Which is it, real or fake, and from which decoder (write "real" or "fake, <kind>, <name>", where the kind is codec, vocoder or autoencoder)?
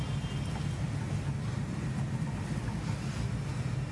real